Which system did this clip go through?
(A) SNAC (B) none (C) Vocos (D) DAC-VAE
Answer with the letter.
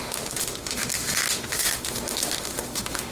D